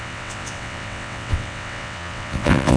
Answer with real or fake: fake